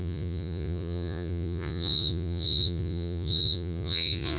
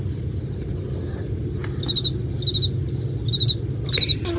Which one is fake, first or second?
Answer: first